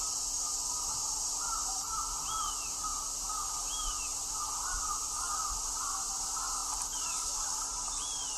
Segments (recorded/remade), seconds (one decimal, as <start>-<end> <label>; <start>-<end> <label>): 0.0-8.4 recorded